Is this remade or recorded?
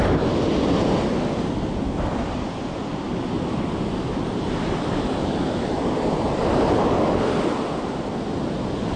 recorded